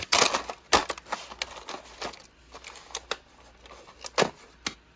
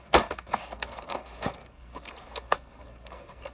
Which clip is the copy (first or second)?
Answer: second